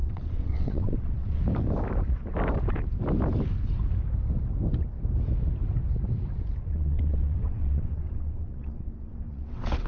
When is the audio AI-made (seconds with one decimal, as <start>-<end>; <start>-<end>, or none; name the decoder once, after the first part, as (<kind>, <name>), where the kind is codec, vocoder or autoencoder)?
0.0-1.4 (vocoder, WaveNeXt); 6.7-9.9